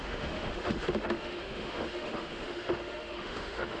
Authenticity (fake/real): fake